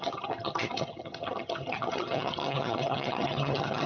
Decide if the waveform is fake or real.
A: fake